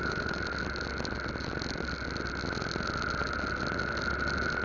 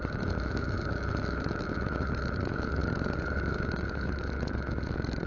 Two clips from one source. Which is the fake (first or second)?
second